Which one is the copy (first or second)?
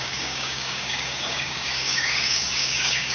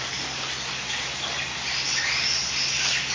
first